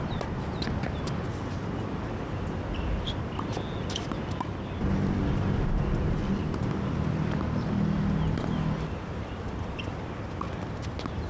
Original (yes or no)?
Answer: yes